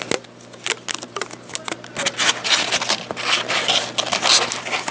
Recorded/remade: recorded